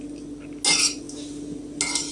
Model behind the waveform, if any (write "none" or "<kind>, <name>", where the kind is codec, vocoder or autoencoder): none